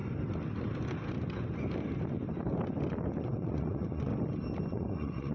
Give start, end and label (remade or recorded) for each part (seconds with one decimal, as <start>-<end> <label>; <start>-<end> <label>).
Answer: 0.0-3.2 recorded; 3.2-4.1 remade; 4.1-4.7 recorded; 4.7-5.3 remade